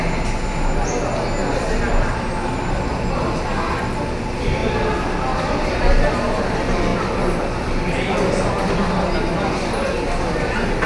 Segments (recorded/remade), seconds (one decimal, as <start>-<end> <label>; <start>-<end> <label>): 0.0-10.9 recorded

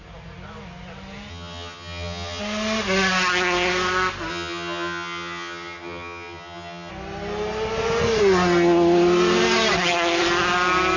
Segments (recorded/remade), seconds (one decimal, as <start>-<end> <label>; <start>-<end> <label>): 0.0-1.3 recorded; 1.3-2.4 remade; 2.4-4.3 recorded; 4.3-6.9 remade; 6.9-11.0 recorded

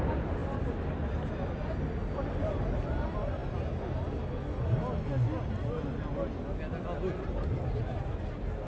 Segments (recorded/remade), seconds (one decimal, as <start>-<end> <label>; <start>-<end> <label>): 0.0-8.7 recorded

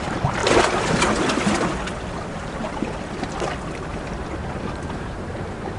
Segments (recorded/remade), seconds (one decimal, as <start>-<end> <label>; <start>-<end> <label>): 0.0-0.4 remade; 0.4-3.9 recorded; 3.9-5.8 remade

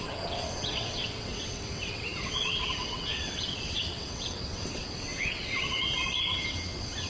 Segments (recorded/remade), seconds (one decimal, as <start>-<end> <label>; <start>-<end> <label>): 0.0-7.1 remade